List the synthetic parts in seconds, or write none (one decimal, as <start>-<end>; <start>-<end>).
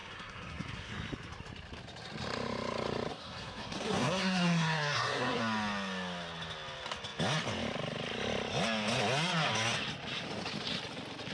0.0-0.9; 3.1-5.4